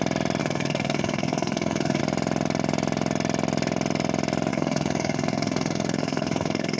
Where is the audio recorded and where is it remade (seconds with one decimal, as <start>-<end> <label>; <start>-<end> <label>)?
0.0-0.4 recorded; 0.4-2.0 remade; 2.0-4.5 recorded; 4.5-6.8 remade